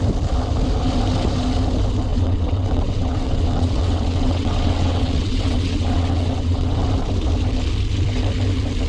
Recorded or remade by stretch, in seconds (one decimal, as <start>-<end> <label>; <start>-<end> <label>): 0.0-2.1 recorded; 2.1-6.9 remade; 6.9-8.9 recorded